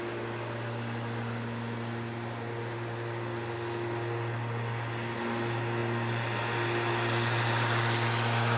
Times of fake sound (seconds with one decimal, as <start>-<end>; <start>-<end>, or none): none